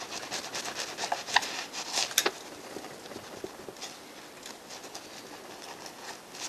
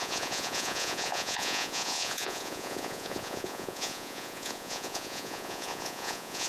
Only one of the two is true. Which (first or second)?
first